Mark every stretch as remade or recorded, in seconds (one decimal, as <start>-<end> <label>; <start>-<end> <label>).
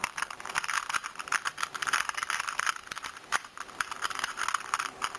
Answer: 0.0-5.2 recorded